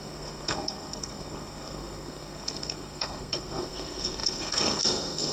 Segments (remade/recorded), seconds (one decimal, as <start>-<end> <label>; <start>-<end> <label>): 0.0-5.3 remade